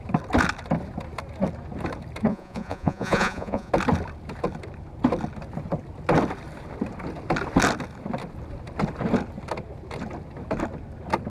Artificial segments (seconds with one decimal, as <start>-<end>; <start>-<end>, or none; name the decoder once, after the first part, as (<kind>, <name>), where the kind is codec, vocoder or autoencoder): 2.3-3.7 (vocoder, Vocos)